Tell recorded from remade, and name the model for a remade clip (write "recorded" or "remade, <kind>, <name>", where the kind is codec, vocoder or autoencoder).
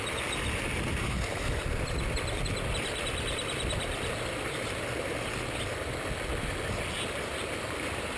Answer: recorded